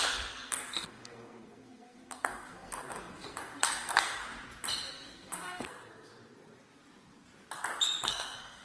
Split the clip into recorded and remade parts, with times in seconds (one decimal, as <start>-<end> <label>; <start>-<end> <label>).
0.0-4.2 remade; 4.2-4.9 recorded; 4.9-6.1 remade; 6.1-8.0 recorded; 8.0-8.6 remade